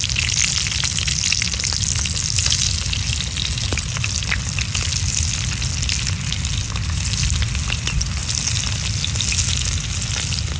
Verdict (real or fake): real